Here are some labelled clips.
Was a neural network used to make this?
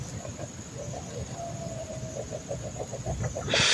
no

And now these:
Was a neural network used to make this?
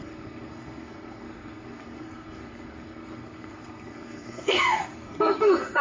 yes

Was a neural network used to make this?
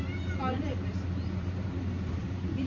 yes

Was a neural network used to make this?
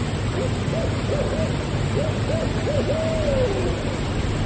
no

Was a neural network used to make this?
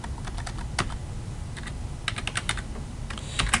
no